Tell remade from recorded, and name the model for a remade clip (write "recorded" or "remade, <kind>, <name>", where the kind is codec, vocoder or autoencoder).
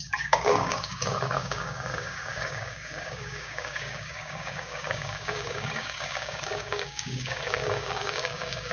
remade, codec, DAC